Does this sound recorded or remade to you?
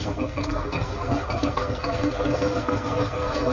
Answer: remade